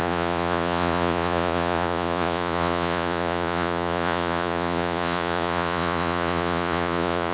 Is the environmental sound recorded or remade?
remade